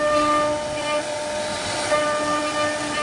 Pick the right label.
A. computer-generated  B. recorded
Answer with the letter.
B